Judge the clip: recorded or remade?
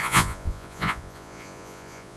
remade